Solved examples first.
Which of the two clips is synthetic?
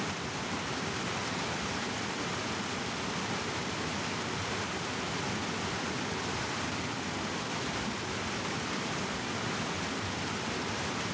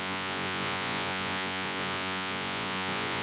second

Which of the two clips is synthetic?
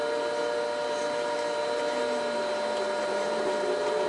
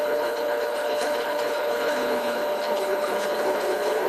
second